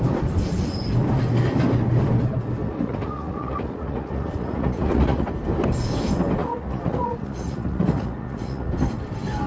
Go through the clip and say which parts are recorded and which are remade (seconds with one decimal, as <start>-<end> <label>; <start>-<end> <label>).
0.0-2.6 recorded; 2.6-5.3 remade; 5.3-6.4 recorded; 6.4-8.7 remade; 8.7-9.5 recorded